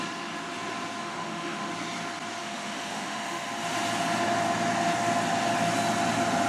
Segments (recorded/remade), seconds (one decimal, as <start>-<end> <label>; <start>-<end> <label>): 0.0-1.0 recorded; 1.0-1.7 remade; 1.7-2.4 recorded; 2.4-3.5 remade; 3.5-6.5 recorded